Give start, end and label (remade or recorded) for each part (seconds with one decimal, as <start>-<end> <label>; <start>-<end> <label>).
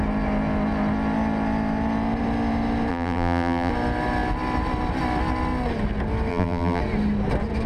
0.0-2.9 recorded; 2.9-3.7 remade; 3.7-6.3 recorded; 6.3-6.8 remade; 6.8-7.7 recorded